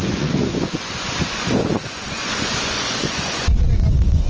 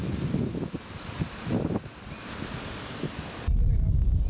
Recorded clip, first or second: second